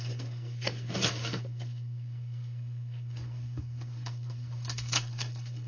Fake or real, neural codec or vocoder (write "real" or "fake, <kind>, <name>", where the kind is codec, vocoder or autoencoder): fake, codec, SNAC